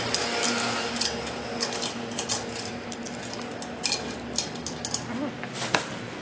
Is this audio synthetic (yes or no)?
no